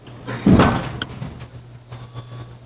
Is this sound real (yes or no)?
yes